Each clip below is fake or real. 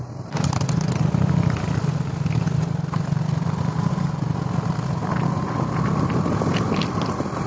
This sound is real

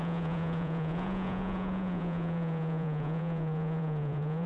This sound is fake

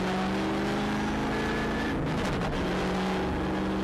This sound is real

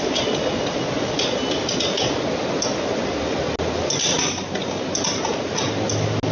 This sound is real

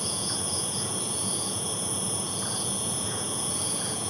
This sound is fake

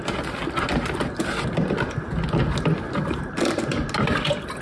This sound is real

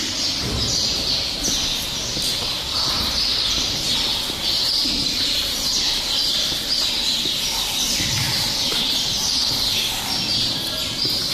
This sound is real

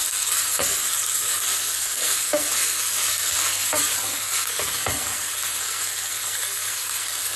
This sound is fake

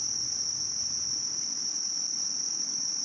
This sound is real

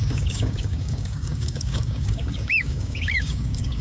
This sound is fake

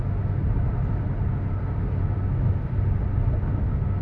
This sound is real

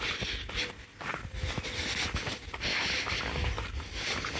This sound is real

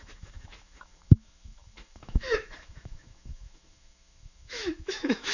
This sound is fake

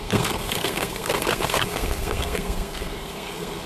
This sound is fake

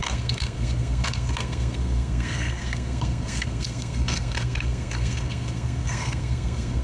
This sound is fake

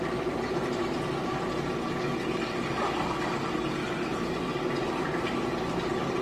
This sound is real